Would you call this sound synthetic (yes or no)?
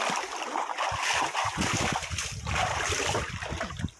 yes